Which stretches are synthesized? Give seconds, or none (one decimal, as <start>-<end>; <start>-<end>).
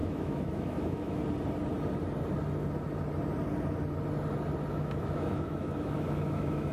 0.0-1.2; 4.7-6.7